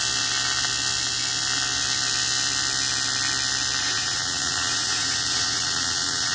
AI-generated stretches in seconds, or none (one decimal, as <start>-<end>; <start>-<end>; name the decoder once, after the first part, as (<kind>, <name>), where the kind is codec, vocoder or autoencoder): 3.8-6.3 (vocoder, Vocos)

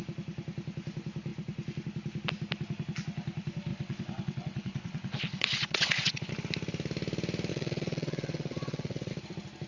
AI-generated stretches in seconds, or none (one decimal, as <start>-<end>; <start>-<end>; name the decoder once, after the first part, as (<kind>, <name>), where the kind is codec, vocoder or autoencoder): 3.7-6.3 (vocoder, WaveNeXt); 7.5-9.1